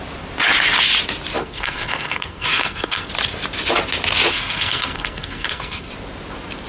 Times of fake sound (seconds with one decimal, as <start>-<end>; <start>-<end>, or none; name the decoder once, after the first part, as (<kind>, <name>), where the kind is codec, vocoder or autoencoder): 1.4-3.1 (codec, SNAC); 4.3-5.9